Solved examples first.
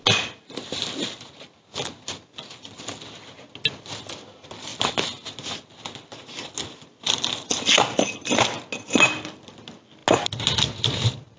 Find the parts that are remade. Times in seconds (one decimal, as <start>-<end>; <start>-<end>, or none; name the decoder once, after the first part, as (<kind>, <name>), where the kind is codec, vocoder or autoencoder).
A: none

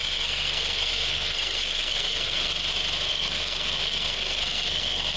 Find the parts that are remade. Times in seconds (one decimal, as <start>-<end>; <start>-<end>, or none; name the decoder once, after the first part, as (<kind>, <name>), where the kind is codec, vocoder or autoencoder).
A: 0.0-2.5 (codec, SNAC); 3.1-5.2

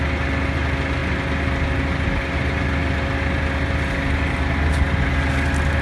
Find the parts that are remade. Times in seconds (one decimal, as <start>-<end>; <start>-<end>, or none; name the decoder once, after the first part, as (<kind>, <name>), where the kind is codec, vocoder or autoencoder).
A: none

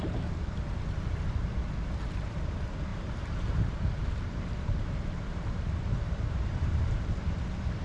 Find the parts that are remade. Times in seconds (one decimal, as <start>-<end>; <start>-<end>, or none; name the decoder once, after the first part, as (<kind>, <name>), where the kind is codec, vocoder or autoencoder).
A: 2.9-7.3 (vocoder, BigVGAN v2)